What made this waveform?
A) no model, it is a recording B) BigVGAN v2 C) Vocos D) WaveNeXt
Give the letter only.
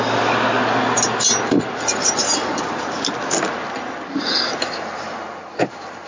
A